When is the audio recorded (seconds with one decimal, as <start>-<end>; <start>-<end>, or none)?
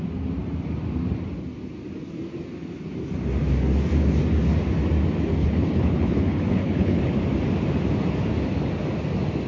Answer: 0.0-5.4; 7.1-9.5